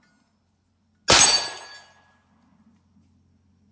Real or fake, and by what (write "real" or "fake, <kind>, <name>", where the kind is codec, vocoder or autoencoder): real